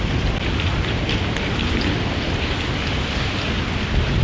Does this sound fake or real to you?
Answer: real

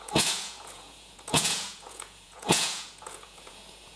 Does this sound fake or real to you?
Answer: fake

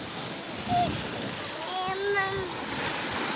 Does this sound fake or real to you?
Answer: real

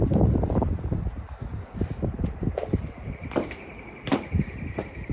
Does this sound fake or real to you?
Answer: fake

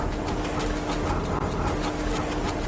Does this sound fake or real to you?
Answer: real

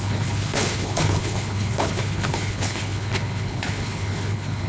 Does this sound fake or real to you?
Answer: fake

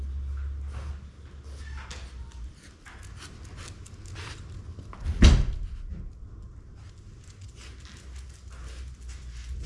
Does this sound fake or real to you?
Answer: real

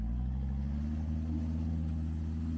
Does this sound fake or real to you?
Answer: real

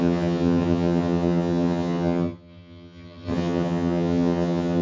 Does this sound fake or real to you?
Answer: fake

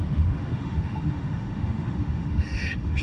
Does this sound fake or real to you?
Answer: fake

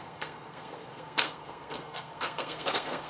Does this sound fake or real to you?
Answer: fake